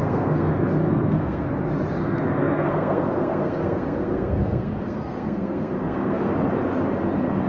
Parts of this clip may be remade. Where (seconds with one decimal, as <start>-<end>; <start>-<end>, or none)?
0.0-0.5; 0.9-1.5; 2.0-6.3